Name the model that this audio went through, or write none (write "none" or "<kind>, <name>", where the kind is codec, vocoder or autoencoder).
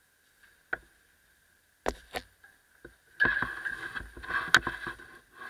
none